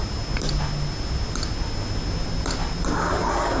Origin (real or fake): real